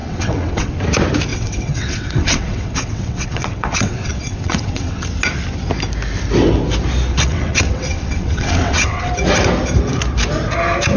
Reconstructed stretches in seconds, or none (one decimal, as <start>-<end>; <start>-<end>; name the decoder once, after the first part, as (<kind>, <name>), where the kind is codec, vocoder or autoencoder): 0.0-0.8 (vocoder, WaveNeXt); 1.3-5.0; 7.1-9.1

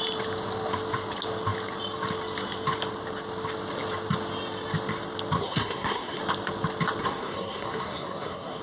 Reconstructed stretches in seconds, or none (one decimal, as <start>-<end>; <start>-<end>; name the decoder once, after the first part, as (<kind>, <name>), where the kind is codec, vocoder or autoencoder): 5.4-6.2 (codec, SNAC); 7.0-8.6

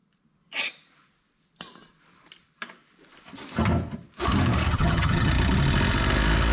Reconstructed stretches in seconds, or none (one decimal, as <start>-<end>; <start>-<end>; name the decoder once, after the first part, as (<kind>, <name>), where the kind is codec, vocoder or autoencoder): 4.7-5.3 (vocoder, HiFi-GAN)

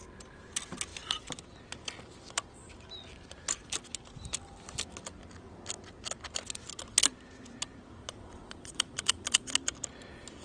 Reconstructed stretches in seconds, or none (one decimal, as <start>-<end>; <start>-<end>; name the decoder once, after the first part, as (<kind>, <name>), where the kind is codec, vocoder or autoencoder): 8.0-9.5 (vocoder, Vocos)

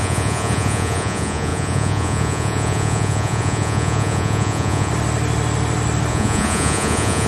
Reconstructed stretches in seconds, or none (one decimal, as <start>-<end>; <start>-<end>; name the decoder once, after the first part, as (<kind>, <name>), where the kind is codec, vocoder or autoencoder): 0.0-4.9 (vocoder, Vocos); 6.1-7.3

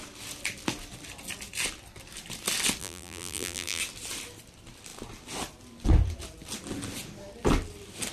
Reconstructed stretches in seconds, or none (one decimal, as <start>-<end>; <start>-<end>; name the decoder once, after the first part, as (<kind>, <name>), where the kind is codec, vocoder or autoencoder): 2.8-3.8 (vocoder, BigVGAN v2)

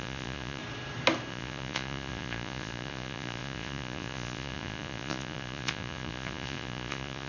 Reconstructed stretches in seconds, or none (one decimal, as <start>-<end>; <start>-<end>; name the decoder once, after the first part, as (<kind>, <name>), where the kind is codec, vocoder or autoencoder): 0.0-0.6 (vocoder, Vocos); 1.3-7.3

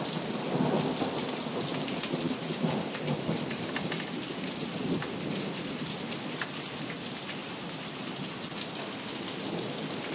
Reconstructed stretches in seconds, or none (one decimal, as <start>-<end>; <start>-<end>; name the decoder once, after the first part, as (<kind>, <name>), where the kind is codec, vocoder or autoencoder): 7.4-7.9 (vocoder, BigVGAN v2)